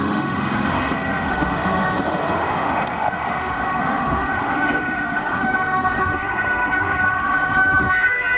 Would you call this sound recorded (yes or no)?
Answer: no